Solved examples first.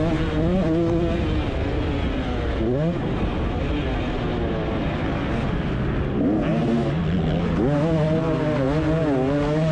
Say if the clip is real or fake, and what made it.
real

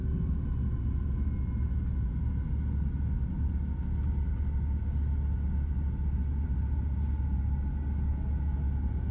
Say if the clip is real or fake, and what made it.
real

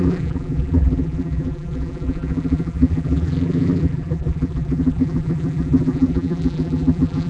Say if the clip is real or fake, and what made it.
fake, vocoder, BigVGAN v2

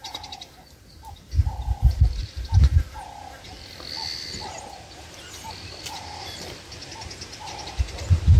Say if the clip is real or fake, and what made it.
real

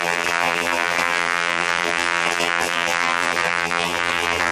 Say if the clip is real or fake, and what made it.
fake, vocoder, BigVGAN v2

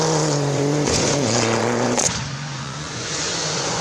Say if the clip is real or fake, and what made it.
fake, vocoder, Vocos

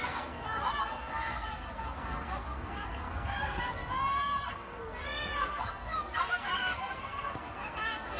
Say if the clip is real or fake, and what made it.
fake, codec, SNAC